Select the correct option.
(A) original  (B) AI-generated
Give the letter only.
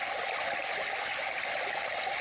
A